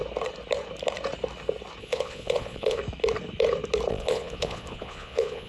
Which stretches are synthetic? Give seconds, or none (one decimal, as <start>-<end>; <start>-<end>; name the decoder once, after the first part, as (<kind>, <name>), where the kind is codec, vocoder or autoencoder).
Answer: 1.8-2.8 (vocoder, Vocos); 3.9-5.5